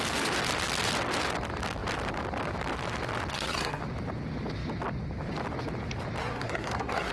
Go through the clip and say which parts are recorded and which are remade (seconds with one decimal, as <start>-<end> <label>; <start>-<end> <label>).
0.0-3.3 recorded; 3.3-3.8 remade; 3.8-6.2 recorded; 6.2-7.1 remade